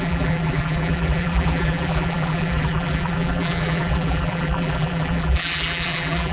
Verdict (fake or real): fake